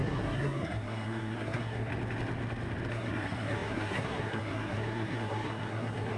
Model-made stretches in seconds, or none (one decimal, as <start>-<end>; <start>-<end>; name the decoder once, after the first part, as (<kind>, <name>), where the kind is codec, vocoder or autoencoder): 0.0-1.9 (codec, SNAC); 2.9-6.2